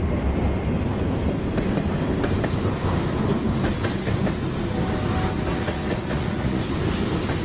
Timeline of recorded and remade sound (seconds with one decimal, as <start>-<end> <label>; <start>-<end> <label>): 0.0-5.5 recorded; 5.5-6.6 remade; 6.6-7.4 recorded